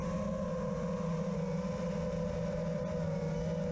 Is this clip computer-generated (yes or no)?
no